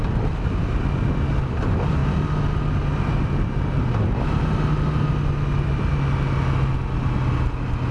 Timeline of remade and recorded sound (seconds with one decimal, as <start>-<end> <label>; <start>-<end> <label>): 0.0-7.9 recorded